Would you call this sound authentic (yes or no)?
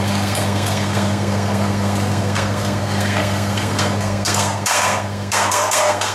no